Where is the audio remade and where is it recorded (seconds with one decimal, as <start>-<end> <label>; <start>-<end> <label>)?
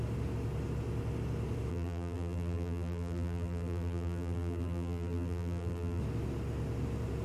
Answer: 0.0-1.7 recorded; 1.7-6.0 remade; 6.0-7.2 recorded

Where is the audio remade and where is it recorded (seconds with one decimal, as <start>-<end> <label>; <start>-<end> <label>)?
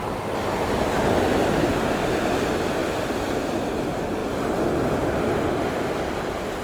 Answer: 0.0-2.8 recorded; 2.8-3.8 remade; 3.8-6.6 recorded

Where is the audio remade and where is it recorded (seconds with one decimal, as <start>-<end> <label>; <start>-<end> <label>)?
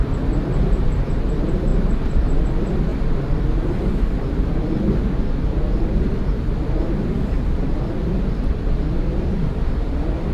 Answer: 0.0-0.5 recorded; 0.5-1.1 remade; 1.1-1.7 recorded; 1.7-2.4 remade; 2.4-10.3 recorded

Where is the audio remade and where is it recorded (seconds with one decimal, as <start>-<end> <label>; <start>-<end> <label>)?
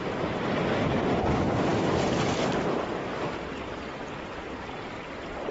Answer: 0.0-5.5 recorded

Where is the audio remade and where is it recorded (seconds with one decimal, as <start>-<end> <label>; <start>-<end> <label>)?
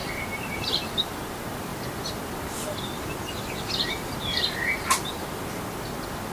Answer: 0.0-1.0 remade; 1.0-6.3 recorded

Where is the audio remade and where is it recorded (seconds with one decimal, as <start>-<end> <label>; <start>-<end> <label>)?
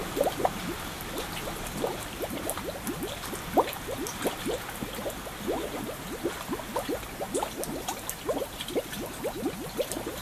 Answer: 0.0-2.6 remade; 2.6-10.2 recorded